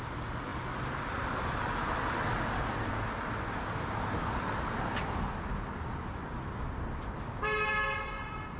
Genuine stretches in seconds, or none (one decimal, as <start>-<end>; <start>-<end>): 0.0-8.6